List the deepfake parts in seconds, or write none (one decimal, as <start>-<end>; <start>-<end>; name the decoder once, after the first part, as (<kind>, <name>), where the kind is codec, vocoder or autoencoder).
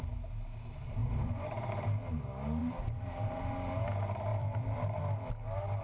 1.0-1.7 (vocoder, BigVGAN v2); 2.6-3.4; 4.3-5.0